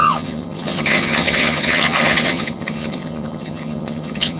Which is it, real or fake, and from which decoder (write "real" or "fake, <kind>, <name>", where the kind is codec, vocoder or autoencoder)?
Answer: fake, vocoder, HiFi-GAN